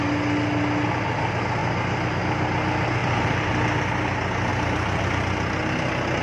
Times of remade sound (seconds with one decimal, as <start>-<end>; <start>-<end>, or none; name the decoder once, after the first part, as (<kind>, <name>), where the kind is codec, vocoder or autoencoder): 3.0-3.5 (vocoder, BigVGAN v2); 4.5-5.0